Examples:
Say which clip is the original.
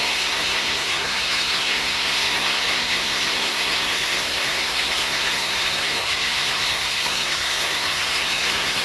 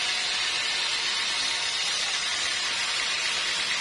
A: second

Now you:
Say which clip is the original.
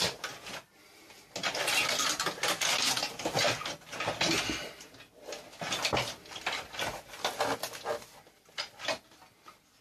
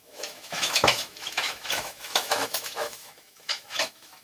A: first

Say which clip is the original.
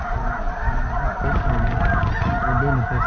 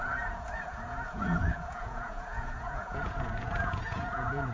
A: first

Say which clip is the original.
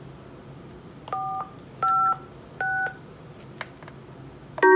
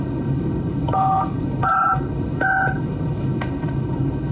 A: first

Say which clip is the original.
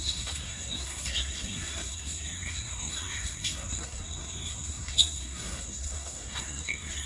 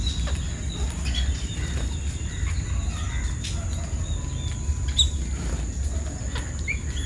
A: second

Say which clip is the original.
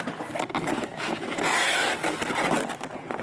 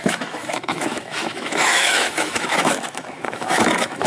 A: first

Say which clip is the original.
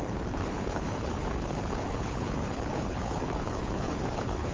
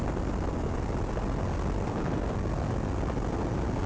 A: second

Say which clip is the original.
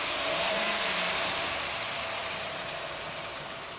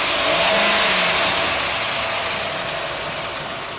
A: second